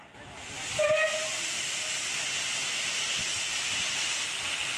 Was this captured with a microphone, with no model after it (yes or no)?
yes